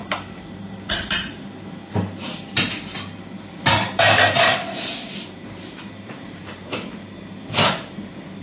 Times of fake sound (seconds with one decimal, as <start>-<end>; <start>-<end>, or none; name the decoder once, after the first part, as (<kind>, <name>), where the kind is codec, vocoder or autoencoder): 0.0-8.4 (vocoder, BigVGAN v2)